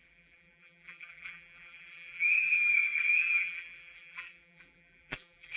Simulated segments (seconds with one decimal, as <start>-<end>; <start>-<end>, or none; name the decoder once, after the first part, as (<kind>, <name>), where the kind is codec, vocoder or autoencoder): 0.0-5.6 (vocoder, BigVGAN v2)